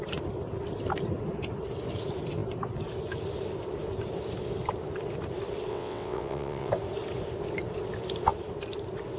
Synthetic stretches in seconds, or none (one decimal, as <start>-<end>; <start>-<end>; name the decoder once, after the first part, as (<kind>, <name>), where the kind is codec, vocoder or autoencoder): 5.7-6.7 (vocoder, WaveNeXt)